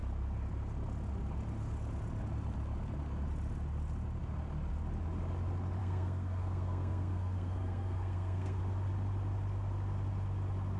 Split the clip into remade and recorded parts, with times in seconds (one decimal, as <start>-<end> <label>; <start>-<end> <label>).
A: 0.0-5.8 recorded; 5.8-8.6 remade; 8.6-10.8 recorded